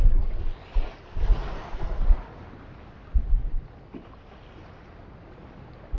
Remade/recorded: recorded